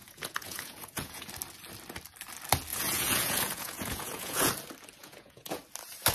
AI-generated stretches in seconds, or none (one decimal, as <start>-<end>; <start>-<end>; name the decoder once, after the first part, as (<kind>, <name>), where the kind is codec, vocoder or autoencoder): 0.0-1.3 (vocoder, Vocos); 2.7-4.5; 5.0-5.6